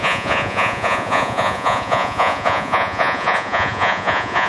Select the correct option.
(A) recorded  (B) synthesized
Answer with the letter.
B